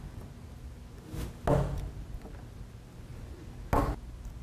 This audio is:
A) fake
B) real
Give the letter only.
B